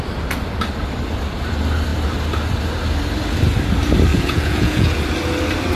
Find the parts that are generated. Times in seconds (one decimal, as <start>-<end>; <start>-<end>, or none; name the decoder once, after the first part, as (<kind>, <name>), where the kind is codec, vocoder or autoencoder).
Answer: 4.1-5.0 (vocoder, Vocos)